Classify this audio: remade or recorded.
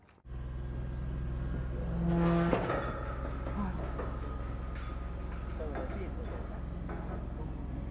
recorded